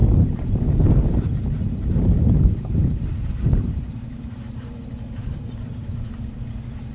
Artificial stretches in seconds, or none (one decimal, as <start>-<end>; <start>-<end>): 0.0-6.9